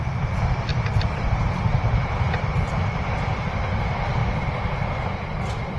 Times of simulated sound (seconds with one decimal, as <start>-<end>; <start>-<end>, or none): 0.7-3.5; 4.2-5.1